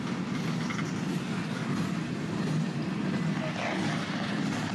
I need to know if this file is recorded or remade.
recorded